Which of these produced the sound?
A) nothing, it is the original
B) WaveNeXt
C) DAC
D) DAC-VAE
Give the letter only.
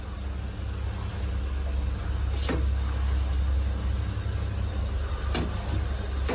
A